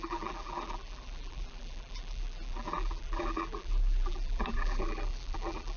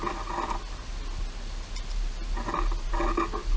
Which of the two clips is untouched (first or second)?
second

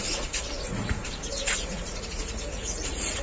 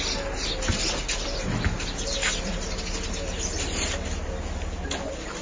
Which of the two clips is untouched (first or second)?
second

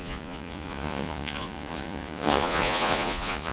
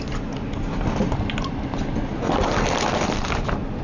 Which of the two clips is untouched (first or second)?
second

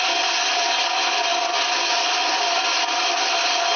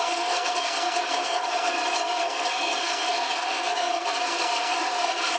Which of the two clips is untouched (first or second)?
first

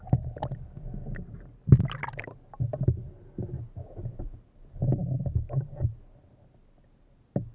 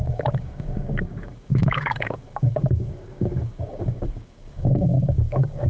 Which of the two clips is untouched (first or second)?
first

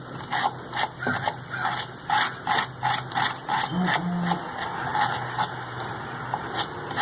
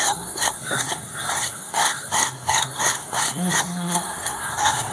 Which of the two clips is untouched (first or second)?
first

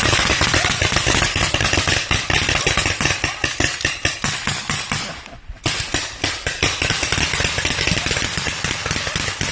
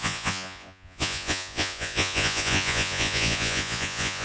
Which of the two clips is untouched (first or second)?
first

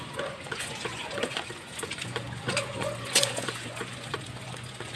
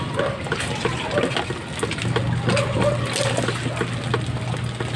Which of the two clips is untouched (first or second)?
second